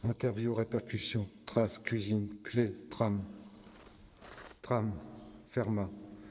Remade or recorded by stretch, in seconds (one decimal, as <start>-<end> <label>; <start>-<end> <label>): 0.0-3.7 remade; 3.7-6.3 recorded